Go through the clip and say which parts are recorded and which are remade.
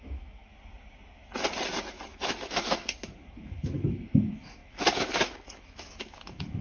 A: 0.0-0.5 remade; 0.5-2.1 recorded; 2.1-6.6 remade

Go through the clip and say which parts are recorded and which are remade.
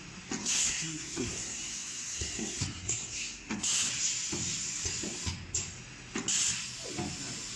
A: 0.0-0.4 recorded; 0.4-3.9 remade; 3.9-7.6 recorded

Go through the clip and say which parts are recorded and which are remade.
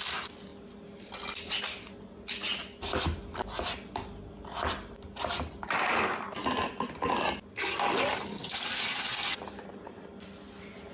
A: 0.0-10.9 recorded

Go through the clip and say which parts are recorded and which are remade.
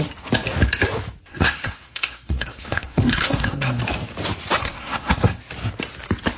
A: 0.0-1.3 recorded; 1.3-3.8 remade; 3.8-4.6 recorded; 4.6-5.4 remade; 5.4-6.4 recorded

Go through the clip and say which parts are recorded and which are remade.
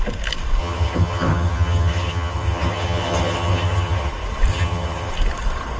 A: 0.0-0.6 recorded; 0.6-4.1 remade; 4.1-4.5 recorded; 4.5-5.1 remade; 5.1-5.8 recorded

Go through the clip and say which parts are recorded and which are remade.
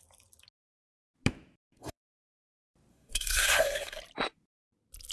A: 0.0-1.8 recorded; 1.8-2.4 remade; 2.4-2.9 recorded; 2.9-4.0 remade; 4.0-5.1 recorded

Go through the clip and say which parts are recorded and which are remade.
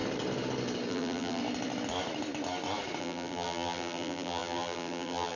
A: 0.0-0.9 recorded; 0.9-1.4 remade; 1.4-3.0 recorded; 3.0-5.4 remade